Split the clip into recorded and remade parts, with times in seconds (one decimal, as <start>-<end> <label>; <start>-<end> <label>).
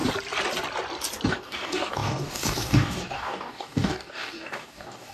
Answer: 0.0-1.3 recorded; 1.3-5.1 remade